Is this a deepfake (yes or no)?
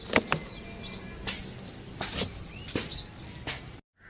no